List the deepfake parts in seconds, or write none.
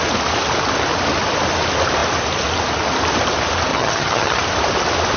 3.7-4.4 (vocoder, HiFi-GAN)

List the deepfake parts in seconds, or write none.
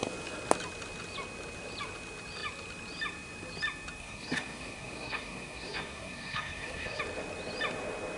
4.0-7.0 (codec, SNAC)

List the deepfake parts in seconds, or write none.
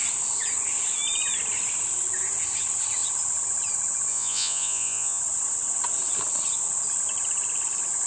4.1-5.2 (vocoder, Vocos)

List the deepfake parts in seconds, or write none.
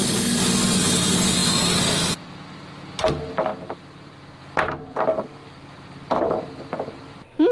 5.1-5.7 (codec, DAC)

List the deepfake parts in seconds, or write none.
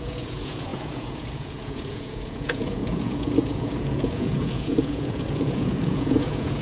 0.0-6.6 (vocoder, Vocos)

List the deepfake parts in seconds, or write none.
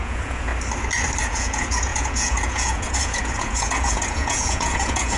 0.0-0.5 (vocoder, Vocos); 1.2-5.2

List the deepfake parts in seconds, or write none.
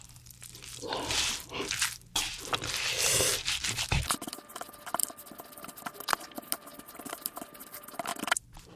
5.0-5.7 (vocoder, BigVGAN v2)